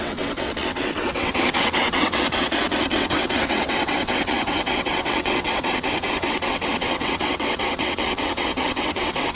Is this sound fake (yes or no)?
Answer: yes